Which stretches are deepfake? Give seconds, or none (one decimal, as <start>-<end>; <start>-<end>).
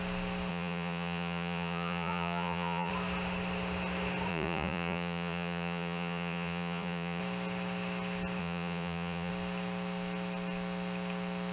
0.5-2.9; 4.3-7.2; 8.4-9.3